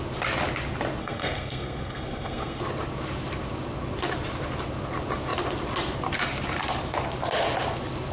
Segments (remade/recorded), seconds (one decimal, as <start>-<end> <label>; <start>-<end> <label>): 0.0-1.0 recorded; 1.0-2.6 remade; 2.6-8.1 recorded